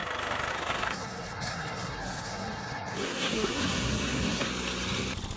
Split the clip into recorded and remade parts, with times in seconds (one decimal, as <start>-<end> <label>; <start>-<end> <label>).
0.0-0.5 recorded; 0.5-4.5 remade; 4.5-5.4 recorded